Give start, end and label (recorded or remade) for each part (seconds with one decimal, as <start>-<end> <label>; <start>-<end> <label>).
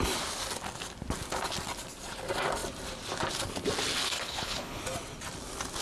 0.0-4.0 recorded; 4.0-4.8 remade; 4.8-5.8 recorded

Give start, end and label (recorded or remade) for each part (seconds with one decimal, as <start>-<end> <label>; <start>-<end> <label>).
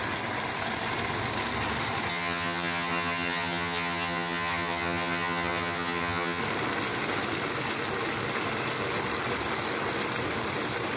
0.0-2.1 recorded; 2.1-6.4 remade; 6.4-11.0 recorded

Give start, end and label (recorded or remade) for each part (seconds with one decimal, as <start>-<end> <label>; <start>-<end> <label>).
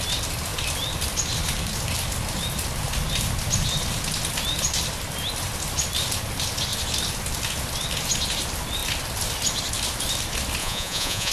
0.0-10.6 recorded; 10.6-11.3 remade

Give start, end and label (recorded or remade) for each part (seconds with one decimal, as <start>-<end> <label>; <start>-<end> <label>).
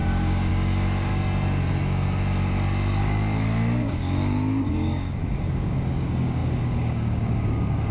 0.0-1.1 remade; 1.1-3.0 recorded; 3.0-7.9 remade